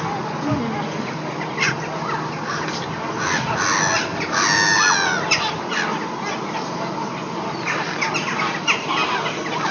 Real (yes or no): yes